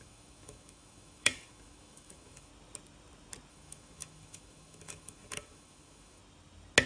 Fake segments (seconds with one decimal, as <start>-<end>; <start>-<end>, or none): 0.0-2.5; 3.5-6.2